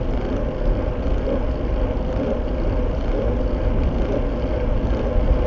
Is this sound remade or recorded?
recorded